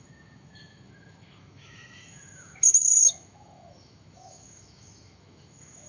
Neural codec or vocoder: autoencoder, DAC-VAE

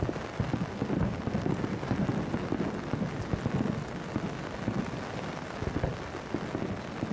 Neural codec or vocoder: none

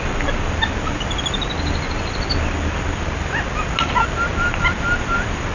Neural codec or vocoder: none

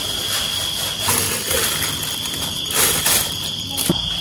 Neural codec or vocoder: none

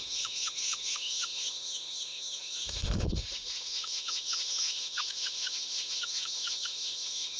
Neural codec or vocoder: autoencoder, DAC-VAE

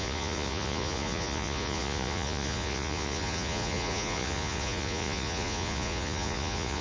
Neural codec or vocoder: vocoder, Vocos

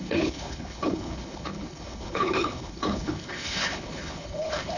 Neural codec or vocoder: codec, HILCodec